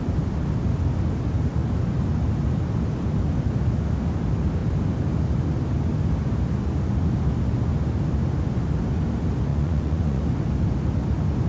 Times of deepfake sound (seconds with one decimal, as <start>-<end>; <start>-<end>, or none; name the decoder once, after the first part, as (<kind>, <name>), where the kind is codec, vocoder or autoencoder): 9.5-10.2 (vocoder, Vocos)